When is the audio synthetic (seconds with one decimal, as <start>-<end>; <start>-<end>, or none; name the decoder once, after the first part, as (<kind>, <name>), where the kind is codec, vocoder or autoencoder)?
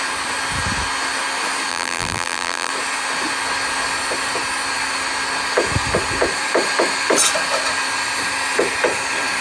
1.7-2.7 (vocoder, BigVGAN v2)